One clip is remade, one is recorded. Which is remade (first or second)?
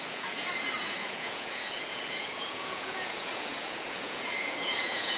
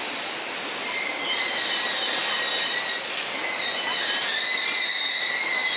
first